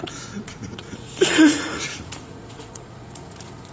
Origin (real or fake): fake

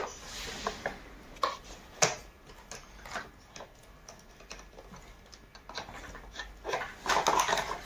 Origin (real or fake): real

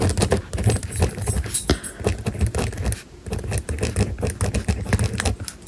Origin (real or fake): real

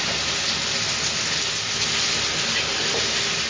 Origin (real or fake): real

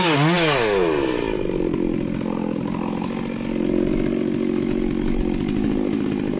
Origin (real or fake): real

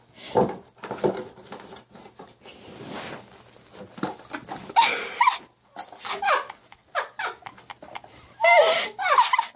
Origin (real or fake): real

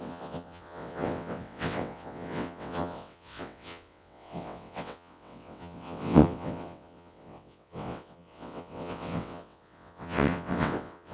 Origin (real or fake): fake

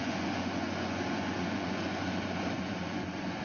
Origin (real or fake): fake